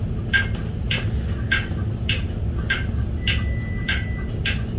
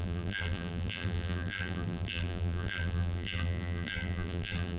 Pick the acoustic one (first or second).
first